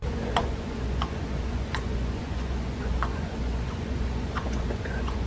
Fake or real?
fake